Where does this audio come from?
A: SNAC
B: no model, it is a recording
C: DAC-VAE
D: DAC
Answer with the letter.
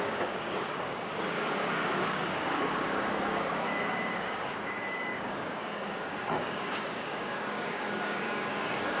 D